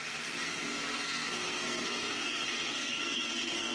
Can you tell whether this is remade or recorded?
remade